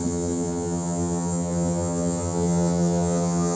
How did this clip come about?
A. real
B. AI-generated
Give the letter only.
B